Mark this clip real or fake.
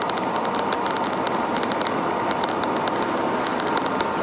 real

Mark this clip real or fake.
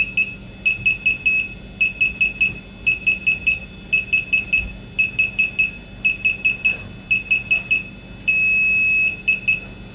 real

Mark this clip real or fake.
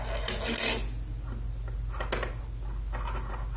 real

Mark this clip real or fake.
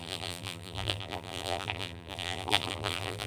fake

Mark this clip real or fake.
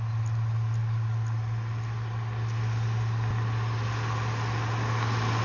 real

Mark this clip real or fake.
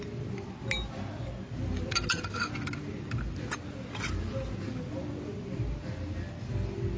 real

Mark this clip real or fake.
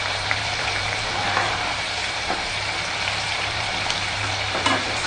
fake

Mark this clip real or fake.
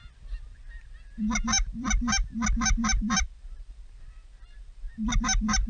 fake